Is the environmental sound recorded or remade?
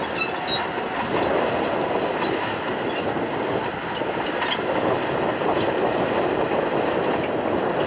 recorded